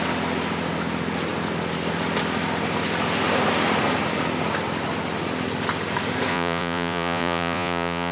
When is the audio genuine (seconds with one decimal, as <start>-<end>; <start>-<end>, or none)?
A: 0.0-6.3